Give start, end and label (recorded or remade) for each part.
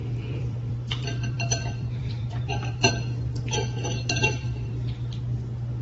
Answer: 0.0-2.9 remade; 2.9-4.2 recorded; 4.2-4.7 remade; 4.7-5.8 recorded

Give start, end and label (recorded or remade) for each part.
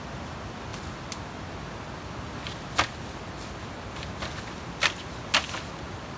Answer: 0.0-6.2 recorded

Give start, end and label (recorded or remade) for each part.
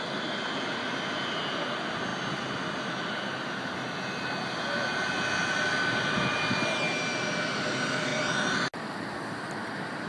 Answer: 0.0-10.1 recorded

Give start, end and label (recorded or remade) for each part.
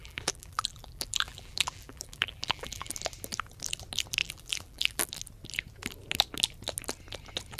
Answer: 0.0-2.9 remade; 2.9-4.2 recorded; 4.2-5.1 remade; 5.1-7.6 recorded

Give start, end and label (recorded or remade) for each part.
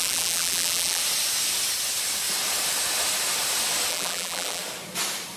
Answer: 0.0-1.0 remade; 1.0-3.9 recorded; 3.9-4.6 remade; 4.6-5.4 recorded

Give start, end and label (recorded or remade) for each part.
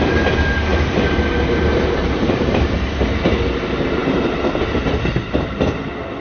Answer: 0.0-0.7 recorded; 0.7-3.2 remade; 3.2-6.2 recorded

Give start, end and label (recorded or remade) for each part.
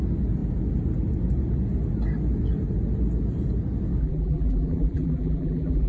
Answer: 0.0-4.0 recorded; 4.0-5.9 remade